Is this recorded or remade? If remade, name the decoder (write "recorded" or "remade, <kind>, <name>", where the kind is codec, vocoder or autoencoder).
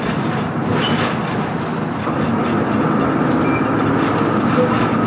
recorded